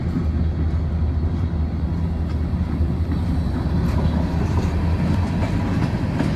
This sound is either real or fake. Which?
real